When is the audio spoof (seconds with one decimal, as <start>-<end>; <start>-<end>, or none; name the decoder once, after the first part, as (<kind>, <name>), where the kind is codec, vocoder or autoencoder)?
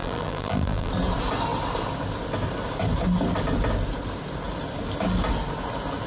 0.0-0.9 (vocoder, BigVGAN v2)